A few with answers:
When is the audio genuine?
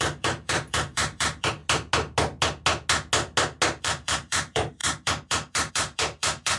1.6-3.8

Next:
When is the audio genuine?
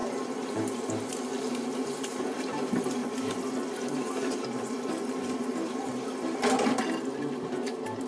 1.3-3.0; 6.8-8.1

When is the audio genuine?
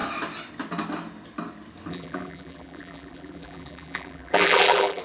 0.0-1.9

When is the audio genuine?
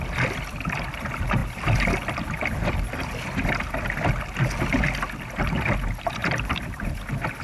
0.0-6.2; 6.9-7.4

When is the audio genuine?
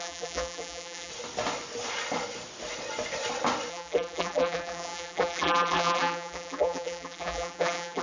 1.1-3.7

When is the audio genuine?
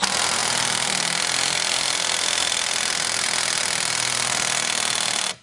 0.0-5.4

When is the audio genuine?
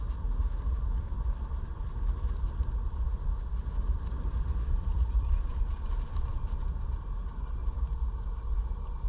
0.0-0.4; 5.5-9.1